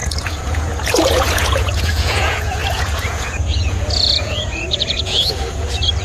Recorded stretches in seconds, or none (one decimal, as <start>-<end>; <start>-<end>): none